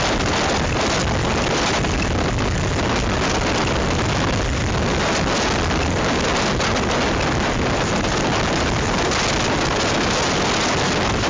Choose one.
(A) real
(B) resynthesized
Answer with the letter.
A